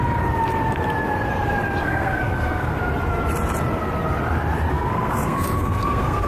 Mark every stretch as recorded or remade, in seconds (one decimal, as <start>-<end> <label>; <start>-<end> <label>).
0.0-1.8 recorded; 1.8-2.8 remade; 2.8-4.7 recorded; 4.7-6.3 remade